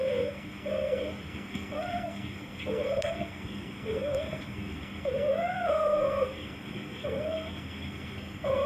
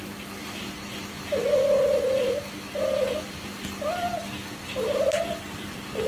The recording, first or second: second